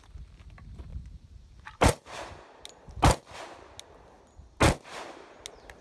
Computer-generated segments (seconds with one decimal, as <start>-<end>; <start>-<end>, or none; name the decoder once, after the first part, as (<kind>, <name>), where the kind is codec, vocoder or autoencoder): 0.9-2.3 (vocoder, BigVGAN v2)